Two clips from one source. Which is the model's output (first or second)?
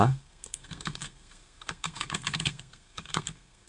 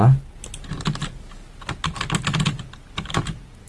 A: first